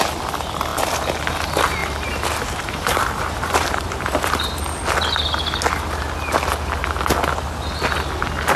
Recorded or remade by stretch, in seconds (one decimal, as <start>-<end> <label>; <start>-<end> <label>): 0.0-1.8 recorded; 1.8-4.6 remade; 4.6-8.6 recorded